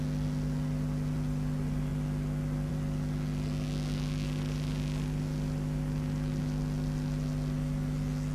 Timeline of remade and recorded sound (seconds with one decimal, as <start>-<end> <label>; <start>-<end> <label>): 0.0-8.3 recorded